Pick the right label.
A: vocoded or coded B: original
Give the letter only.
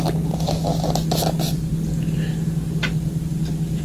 B